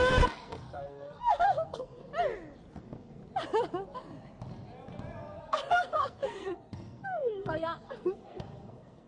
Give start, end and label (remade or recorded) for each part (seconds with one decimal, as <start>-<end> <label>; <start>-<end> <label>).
0.0-2.1 remade; 2.1-2.8 recorded; 2.8-3.2 remade; 3.2-5.4 recorded; 5.4-9.1 remade